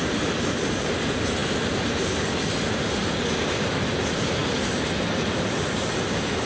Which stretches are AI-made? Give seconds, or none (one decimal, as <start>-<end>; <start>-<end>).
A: none